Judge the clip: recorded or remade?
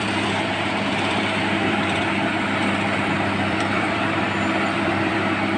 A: remade